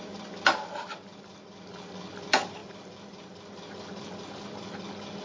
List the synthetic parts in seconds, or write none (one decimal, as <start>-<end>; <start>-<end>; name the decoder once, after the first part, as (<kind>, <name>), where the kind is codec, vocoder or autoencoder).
none